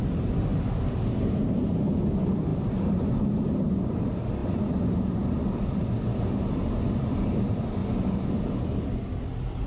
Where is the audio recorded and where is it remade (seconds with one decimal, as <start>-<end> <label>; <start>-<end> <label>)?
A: 0.0-0.5 remade; 0.5-1.1 recorded; 1.1-9.7 remade